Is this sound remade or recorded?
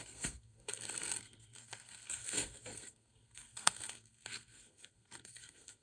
remade